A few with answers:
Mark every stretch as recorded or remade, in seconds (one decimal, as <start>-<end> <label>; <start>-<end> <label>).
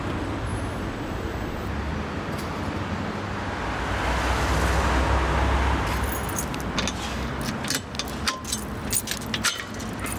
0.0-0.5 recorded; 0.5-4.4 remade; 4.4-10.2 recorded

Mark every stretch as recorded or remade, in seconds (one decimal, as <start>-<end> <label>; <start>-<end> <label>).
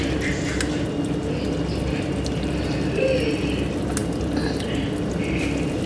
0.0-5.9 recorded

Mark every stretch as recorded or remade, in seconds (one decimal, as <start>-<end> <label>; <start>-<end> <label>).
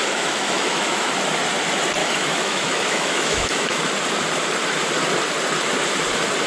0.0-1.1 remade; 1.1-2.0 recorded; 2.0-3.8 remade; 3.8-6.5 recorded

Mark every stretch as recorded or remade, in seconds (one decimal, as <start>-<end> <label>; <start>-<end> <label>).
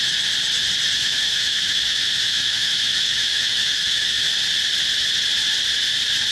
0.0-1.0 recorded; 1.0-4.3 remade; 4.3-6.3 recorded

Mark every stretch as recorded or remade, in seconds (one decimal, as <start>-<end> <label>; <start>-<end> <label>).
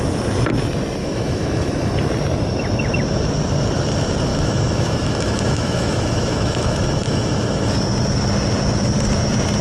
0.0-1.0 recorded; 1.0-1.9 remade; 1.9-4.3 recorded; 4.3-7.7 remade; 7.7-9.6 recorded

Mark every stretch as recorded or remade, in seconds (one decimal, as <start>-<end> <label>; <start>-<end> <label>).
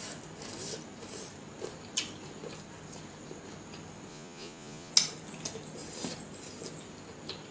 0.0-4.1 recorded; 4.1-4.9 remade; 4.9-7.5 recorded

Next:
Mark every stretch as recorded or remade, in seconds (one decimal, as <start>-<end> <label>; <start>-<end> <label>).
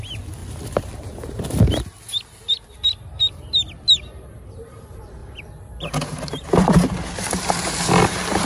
0.0-0.4 recorded; 0.4-1.4 remade; 1.4-5.2 recorded; 5.2-7.5 remade; 7.5-8.5 recorded